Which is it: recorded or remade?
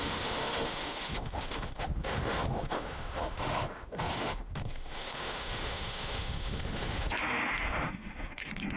remade